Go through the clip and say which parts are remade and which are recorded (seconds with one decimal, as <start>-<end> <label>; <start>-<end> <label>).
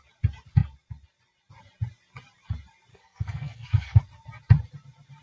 0.0-2.9 recorded; 2.9-4.0 remade; 4.0-5.2 recorded